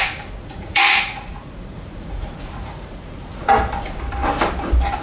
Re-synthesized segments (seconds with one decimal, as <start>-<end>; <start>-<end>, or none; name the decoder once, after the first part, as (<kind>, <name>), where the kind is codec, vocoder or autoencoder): 0.4-3.4 (vocoder, Vocos)